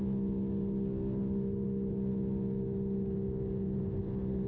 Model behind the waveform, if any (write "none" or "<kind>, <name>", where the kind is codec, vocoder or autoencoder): none